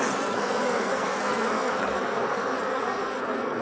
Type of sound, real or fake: fake